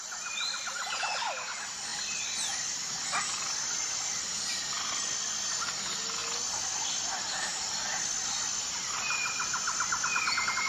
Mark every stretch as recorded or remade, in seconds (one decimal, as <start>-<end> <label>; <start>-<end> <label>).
0.0-10.7 recorded